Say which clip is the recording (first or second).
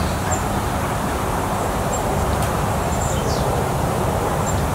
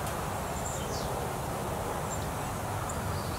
second